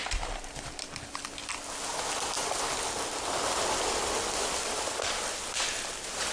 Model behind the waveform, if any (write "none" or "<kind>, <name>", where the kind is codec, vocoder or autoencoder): none